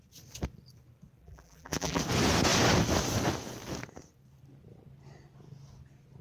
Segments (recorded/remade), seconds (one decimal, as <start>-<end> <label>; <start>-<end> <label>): 0.0-1.2 recorded; 1.2-2.0 remade; 2.0-6.2 recorded